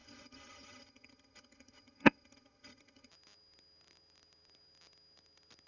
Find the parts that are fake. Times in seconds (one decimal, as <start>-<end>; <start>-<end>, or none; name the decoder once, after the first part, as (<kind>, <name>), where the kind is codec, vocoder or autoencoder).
0.0-3.1 (vocoder, HiFi-GAN)